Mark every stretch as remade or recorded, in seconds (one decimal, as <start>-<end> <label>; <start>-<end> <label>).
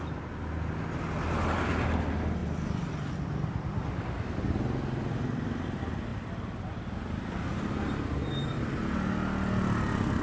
0.0-10.2 recorded